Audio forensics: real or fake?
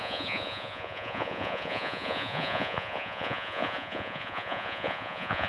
fake